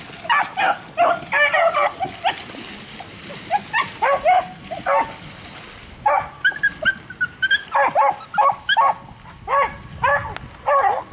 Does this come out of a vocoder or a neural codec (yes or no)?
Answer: no